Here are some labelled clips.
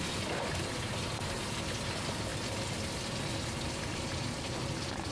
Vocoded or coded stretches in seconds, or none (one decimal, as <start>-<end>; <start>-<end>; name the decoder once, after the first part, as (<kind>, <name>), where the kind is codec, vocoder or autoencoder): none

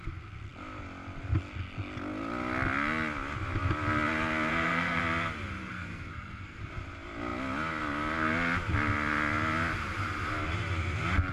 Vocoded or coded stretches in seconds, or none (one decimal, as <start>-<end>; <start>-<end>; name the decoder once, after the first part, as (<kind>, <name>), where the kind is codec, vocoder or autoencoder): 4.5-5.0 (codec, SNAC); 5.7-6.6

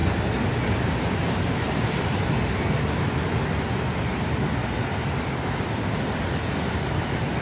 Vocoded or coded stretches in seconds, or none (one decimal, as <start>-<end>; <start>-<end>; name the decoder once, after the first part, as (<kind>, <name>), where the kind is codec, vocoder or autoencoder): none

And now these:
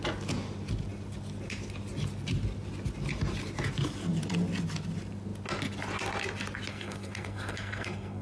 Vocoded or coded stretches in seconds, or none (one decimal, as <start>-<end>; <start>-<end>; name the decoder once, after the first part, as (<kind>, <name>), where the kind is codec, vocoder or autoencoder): 6.7-8.2 (codec, SNAC)

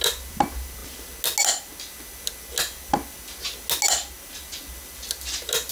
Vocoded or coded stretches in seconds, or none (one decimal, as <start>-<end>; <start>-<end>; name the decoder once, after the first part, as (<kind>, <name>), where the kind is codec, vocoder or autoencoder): none

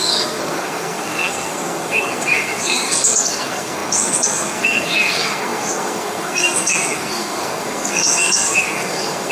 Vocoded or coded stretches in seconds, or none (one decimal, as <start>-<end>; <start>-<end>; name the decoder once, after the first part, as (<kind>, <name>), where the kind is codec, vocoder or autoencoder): 0.0-9.3 (codec, SNAC)

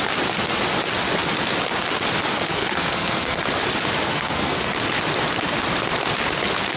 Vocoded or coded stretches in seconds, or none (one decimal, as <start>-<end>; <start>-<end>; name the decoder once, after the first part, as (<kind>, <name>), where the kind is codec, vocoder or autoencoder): 2.3-3.4 (codec, SNAC); 4.0-4.7